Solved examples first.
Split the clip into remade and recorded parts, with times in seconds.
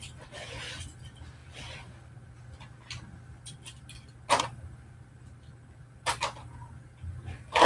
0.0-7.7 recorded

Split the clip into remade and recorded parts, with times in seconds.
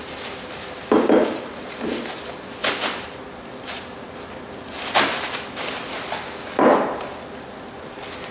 0.0-8.3 recorded